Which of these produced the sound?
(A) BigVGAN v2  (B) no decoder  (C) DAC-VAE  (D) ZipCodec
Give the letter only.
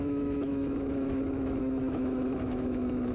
C